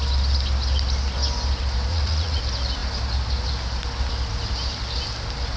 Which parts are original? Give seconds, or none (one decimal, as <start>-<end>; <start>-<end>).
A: 0.0-1.9; 2.4-5.6